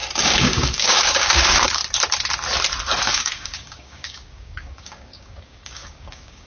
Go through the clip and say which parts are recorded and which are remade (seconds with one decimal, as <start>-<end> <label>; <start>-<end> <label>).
0.0-1.8 remade; 1.8-3.1 recorded; 3.1-6.5 remade